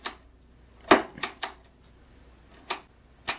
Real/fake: real